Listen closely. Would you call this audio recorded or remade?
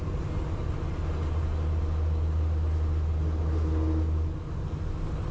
recorded